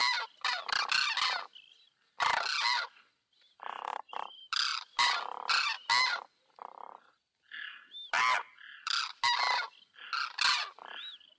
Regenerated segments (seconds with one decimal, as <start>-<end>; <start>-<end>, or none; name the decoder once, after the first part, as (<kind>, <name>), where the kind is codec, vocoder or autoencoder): none